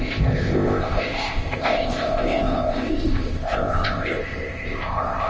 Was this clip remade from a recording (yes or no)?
yes